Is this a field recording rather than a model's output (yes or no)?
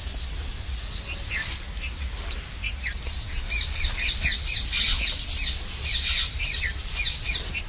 yes